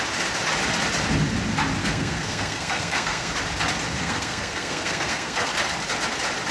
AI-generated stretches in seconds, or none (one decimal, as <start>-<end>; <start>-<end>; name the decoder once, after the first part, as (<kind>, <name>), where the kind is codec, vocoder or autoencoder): 1.8-3.3 (codec, SNAC); 4.0-5.5

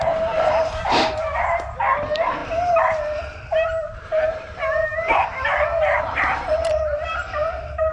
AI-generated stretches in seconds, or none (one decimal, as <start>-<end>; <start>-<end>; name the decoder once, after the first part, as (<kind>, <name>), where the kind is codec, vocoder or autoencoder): 0.0-7.9 (vocoder, BigVGAN v2)

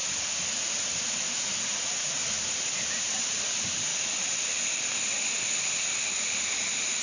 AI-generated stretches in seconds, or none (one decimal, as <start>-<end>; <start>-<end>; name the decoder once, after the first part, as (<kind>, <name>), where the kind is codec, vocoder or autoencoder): 0.7-2.2 (vocoder, BigVGAN v2); 3.0-3.9; 6.5-7.0

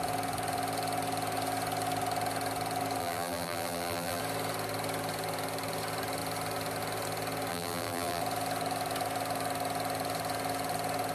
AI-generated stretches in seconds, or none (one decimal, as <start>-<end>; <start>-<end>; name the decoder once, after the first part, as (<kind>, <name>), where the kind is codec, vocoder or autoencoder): 3.0-4.2 (vocoder, BigVGAN v2); 7.5-8.2